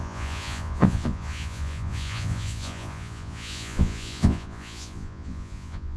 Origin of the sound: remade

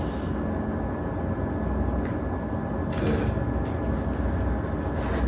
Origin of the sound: recorded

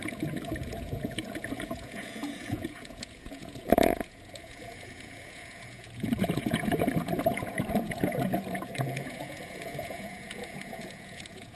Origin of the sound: remade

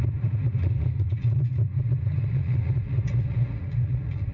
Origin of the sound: remade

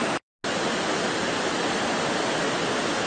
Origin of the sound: recorded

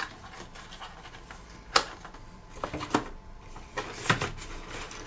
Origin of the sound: recorded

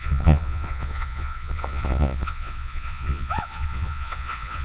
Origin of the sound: remade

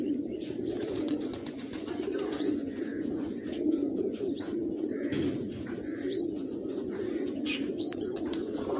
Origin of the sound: remade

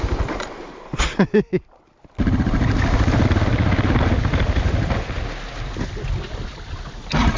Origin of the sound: recorded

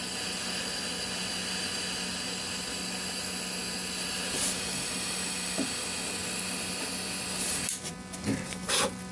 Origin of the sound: recorded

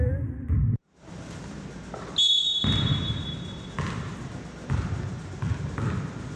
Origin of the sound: recorded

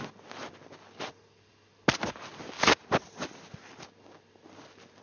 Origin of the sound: recorded